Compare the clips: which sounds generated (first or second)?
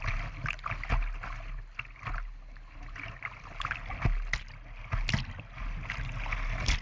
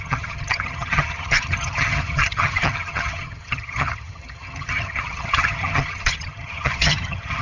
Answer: second